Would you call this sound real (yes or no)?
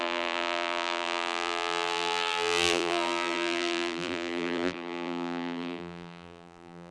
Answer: no